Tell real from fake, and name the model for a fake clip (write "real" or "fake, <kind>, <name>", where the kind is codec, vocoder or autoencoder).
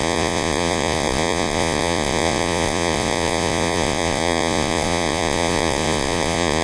fake, vocoder, Vocos